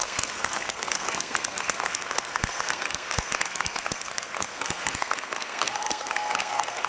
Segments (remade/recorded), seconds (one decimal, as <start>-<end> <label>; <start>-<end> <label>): 0.0-6.9 remade

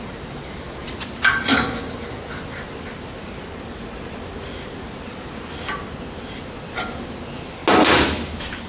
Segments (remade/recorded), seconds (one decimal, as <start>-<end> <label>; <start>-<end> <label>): 0.0-0.5 recorded; 0.5-1.5 remade; 1.5-8.7 recorded

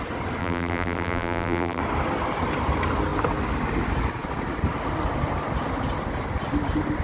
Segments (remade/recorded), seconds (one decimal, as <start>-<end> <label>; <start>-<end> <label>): 0.0-0.4 recorded; 0.4-1.8 remade; 1.8-7.0 recorded